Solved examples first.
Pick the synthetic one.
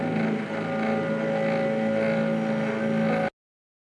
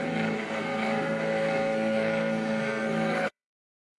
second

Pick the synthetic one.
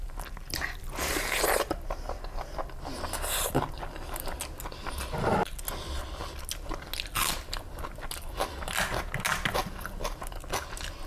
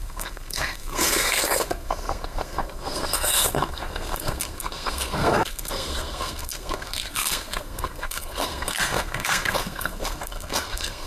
second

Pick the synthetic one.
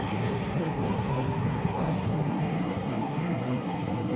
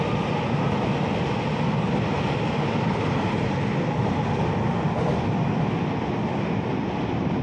first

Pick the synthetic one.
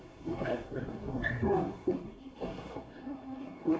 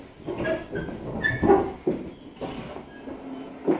first